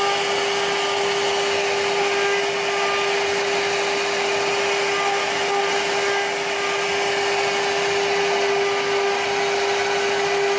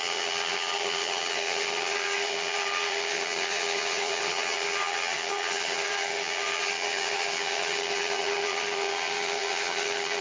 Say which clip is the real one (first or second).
first